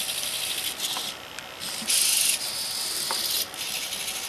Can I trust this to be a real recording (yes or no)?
yes